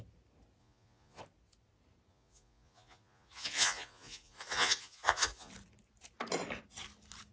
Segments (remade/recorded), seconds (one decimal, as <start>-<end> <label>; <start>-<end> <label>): 0.0-0.6 recorded; 0.6-1.2 remade; 1.2-2.1 recorded; 2.1-5.5 remade; 5.5-7.3 recorded